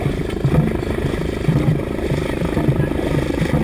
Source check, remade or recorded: recorded